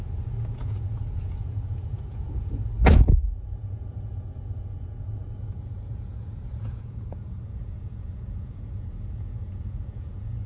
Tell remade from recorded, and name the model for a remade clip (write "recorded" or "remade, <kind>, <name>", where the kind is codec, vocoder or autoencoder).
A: remade, vocoder, Vocos